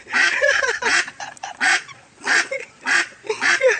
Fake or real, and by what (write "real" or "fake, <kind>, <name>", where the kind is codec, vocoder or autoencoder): fake, vocoder, Vocos